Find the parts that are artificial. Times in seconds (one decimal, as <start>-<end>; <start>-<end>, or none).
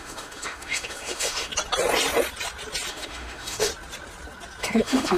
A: 0.0-1.5; 2.9-3.7; 4.6-5.2